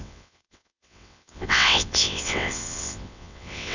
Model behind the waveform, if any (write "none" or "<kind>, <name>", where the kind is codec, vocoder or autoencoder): vocoder, WaveNeXt